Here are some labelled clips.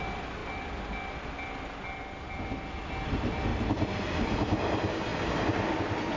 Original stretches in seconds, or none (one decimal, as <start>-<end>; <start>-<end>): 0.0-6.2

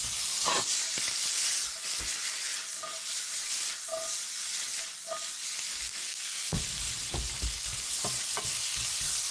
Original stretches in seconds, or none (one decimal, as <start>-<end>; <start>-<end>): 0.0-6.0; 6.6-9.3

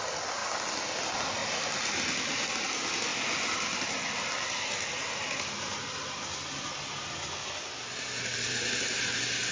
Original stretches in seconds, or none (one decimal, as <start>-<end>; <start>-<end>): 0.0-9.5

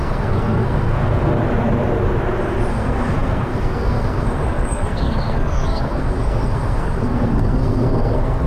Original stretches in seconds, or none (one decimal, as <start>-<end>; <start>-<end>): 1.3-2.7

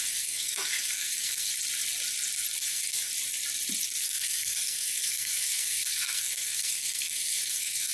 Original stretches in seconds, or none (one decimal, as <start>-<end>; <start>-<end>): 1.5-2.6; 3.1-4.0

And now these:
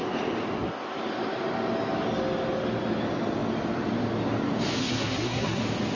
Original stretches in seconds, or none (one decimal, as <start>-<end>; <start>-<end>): 0.0-4.8; 5.6-6.0